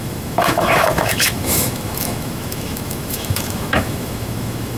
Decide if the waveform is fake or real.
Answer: fake